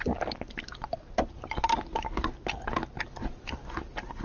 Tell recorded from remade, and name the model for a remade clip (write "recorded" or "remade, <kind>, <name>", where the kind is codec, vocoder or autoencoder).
recorded